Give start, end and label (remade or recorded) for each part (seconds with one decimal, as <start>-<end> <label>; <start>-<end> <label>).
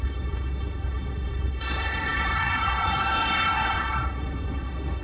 0.0-5.0 remade